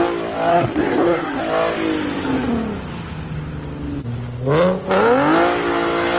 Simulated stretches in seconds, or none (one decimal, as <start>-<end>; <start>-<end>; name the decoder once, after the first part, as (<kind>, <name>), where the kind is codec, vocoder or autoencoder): 0.5-1.4 (codec, SNAC)